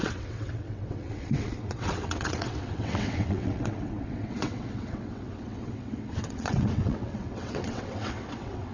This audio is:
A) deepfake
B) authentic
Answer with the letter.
A